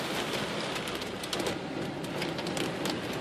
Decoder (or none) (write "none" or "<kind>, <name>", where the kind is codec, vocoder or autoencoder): none